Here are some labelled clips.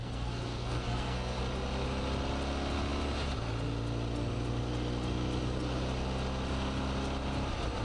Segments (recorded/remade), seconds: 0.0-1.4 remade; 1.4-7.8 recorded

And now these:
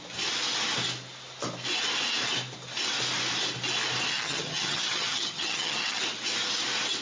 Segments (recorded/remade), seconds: 0.0-4.1 recorded; 4.1-6.0 remade; 6.0-7.0 recorded

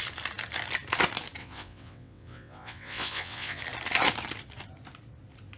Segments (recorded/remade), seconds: 0.0-1.4 recorded; 1.4-3.6 remade; 3.6-5.6 recorded

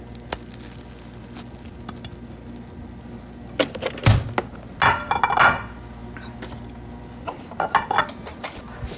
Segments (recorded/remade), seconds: 0.0-9.0 recorded

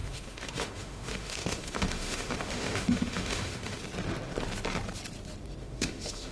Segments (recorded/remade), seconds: 0.0-3.8 remade; 3.8-5.6 recorded; 5.6-6.3 remade

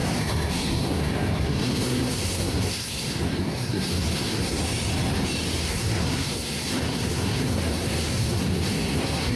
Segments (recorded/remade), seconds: 0.0-4.6 remade; 4.6-5.6 recorded; 5.6-9.4 remade

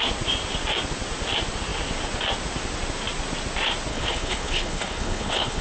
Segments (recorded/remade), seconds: 0.0-3.9 recorded; 3.9-5.6 remade

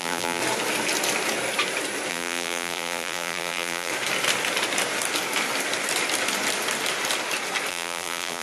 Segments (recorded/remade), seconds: 0.0-0.4 remade; 0.4-2.1 recorded; 2.1-3.9 remade; 3.9-7.7 recorded; 7.7-8.4 remade